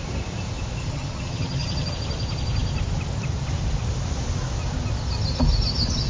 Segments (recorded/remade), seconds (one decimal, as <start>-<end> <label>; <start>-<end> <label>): 0.0-0.8 recorded; 0.8-1.9 remade; 1.9-6.1 recorded